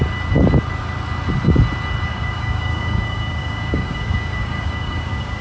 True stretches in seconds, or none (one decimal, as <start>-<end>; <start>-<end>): 0.0-2.1